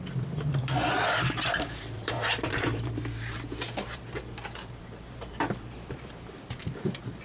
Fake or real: fake